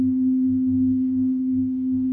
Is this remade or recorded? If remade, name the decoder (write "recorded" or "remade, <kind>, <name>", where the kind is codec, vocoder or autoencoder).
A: remade, codec, DAC